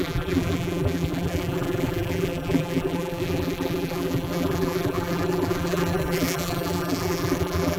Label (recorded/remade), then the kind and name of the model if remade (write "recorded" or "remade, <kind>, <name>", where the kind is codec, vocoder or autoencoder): remade, vocoder, BigVGAN v2